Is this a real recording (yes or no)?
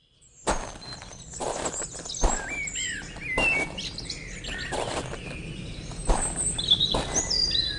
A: yes